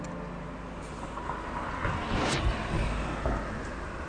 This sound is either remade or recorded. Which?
recorded